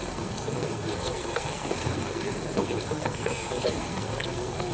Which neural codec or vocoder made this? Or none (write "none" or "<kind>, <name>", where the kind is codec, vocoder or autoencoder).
codec, SNAC